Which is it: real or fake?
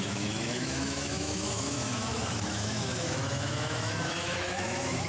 fake